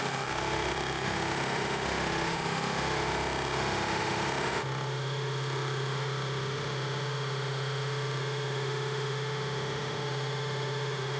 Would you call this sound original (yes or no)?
no